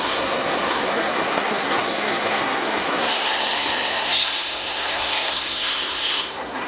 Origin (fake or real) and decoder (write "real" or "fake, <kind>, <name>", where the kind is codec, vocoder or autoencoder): fake, codec, SNAC